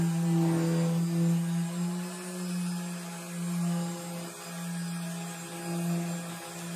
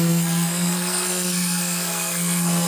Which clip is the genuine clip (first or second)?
first